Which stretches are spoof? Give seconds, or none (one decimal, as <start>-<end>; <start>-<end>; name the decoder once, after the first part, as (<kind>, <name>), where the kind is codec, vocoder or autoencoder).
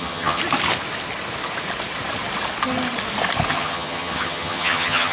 0.0-0.4 (vocoder, HiFi-GAN); 3.5-5.1